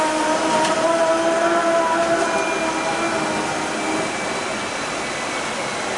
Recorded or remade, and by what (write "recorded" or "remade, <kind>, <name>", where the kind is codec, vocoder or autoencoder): recorded